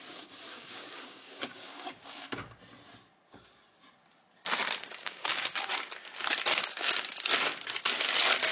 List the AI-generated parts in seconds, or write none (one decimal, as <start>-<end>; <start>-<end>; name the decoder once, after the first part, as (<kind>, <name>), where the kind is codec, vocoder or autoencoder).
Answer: 0.5-2.6 (codec, DAC); 4.9-5.7; 6.5-7.0

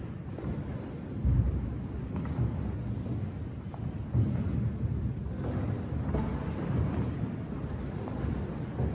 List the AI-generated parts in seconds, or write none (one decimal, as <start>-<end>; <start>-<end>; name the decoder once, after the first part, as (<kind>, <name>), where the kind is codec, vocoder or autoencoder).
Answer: 1.2-1.7 (codec, DAC)

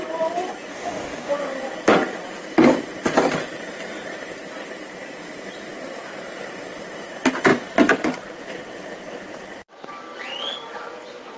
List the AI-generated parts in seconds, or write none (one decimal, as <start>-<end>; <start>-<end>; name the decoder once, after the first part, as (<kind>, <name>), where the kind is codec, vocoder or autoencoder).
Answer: 0.7-1.3 (codec, DAC)

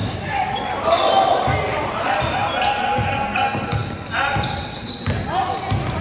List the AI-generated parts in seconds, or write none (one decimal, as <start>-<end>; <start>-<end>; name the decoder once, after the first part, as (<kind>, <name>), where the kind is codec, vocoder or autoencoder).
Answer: 0.0-0.6 (codec, DAC)

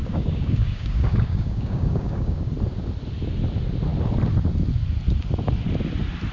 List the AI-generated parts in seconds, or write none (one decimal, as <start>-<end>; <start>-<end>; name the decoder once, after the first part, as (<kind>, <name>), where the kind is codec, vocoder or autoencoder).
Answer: 0.0-2.5 (codec, DAC)

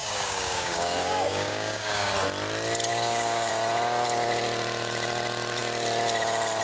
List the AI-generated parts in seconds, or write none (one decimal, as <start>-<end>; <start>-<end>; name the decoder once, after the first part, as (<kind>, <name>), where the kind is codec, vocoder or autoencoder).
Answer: 0.0-2.1 (codec, DAC); 2.9-3.5

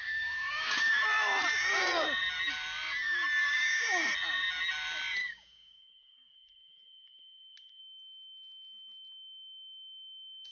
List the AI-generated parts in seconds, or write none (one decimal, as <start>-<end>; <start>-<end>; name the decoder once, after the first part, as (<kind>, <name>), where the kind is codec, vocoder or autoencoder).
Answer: 0.0-0.9 (codec, DAC); 3.4-4.0; 5.2-7.8

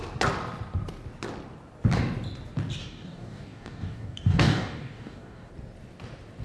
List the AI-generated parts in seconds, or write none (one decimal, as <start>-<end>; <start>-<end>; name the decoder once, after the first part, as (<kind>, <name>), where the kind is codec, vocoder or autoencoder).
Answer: 2.8-5.5 (codec, DAC)